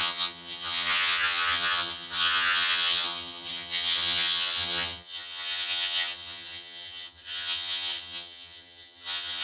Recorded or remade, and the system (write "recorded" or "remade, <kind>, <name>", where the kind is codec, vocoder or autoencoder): remade, vocoder, HiFi-GAN